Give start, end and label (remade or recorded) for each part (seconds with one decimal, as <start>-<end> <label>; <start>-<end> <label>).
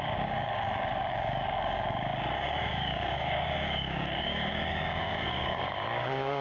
0.0-6.4 remade